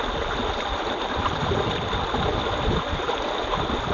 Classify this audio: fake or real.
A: real